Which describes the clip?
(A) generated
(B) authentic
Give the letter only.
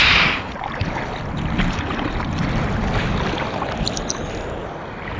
B